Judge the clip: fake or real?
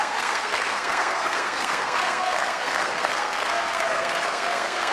fake